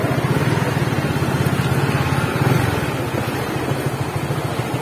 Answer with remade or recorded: recorded